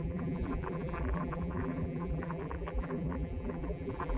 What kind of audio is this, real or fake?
fake